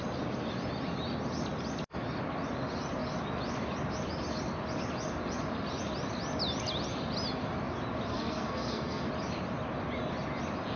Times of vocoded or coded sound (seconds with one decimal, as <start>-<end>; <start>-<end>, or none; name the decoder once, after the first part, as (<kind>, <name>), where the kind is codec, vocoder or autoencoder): 8.1-9.1 (codec, SNAC)